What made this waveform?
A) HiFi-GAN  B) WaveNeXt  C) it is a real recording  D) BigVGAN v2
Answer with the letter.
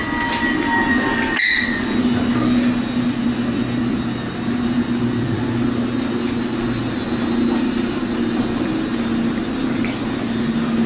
C